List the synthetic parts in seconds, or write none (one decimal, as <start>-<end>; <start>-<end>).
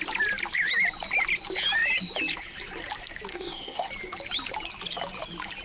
3.3-3.9